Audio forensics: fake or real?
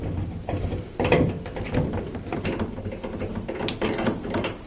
real